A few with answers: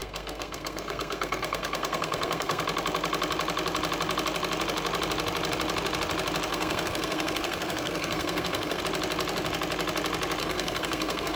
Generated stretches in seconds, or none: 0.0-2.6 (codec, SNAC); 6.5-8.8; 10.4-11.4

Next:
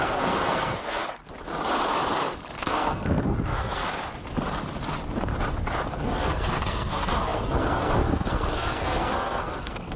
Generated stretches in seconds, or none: 0.0-1.2 (codec, SNAC); 2.6-3.8; 5.9-10.0

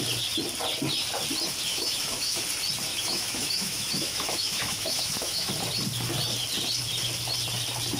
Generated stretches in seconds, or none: 1.7-2.4 (autoencoder, DAC-VAE); 2.9-5.5

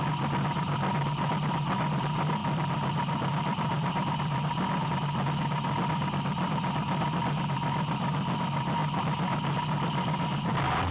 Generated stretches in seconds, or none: 2.4-4.9 (vocoder, BigVGAN v2)